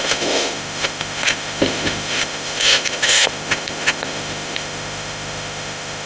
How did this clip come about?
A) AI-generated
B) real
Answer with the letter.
A